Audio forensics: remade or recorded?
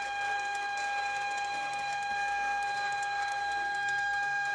remade